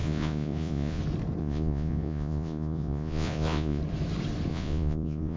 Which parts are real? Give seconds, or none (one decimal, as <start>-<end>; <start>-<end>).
1.0-1.4; 3.8-4.5